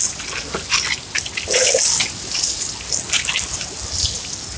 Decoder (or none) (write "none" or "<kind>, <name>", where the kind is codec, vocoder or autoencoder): none